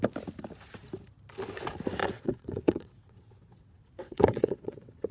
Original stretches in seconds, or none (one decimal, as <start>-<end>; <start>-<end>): 0.0-2.0